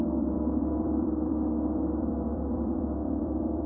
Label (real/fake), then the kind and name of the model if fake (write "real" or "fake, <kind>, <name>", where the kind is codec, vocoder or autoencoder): fake, vocoder, BigVGAN v2